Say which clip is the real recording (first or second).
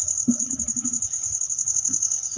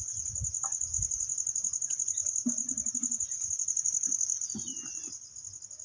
second